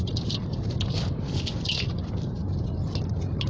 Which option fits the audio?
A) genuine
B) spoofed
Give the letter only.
A